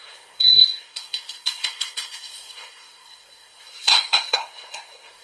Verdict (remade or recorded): remade